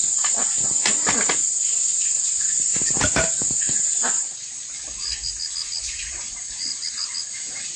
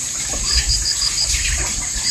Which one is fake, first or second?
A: second